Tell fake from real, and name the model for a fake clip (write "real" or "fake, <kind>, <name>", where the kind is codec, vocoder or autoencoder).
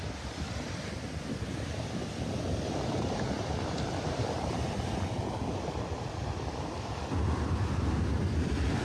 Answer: real